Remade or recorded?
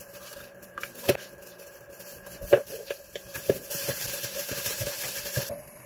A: remade